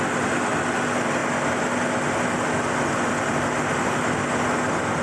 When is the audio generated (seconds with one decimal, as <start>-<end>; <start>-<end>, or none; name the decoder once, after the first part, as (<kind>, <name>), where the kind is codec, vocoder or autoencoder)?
none